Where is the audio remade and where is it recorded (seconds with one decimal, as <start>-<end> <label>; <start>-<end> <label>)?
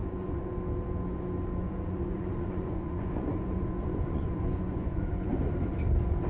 0.0-0.5 remade; 0.5-1.6 recorded; 1.6-5.4 remade; 5.4-6.3 recorded